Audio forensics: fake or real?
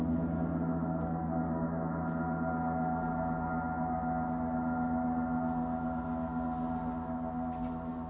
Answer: real